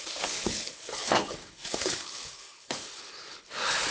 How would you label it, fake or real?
fake